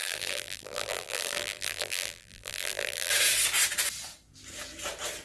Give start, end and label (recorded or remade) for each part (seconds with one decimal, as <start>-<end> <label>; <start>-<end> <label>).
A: 0.0-3.1 remade; 3.1-5.2 recorded